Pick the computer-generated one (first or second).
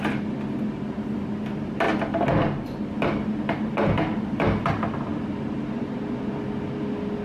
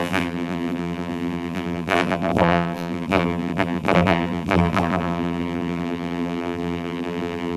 second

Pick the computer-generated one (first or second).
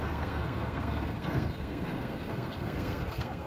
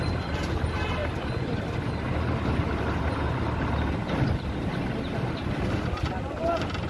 first